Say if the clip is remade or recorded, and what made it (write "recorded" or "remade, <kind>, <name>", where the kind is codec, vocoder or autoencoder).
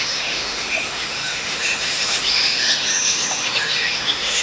remade, autoencoder, DAC-VAE